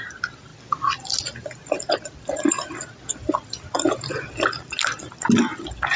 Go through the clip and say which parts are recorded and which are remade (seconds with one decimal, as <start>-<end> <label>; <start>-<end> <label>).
0.0-6.0 recorded